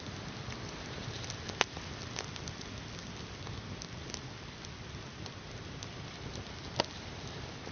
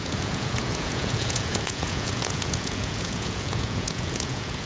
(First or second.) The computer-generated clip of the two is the second